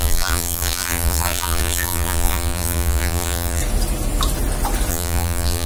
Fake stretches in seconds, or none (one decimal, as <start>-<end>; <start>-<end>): 0.0-3.6; 4.9-5.7